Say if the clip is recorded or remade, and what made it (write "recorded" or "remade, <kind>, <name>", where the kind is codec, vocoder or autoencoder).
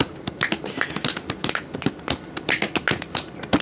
recorded